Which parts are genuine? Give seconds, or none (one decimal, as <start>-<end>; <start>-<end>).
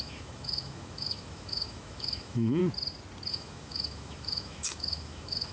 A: 2.6-3.3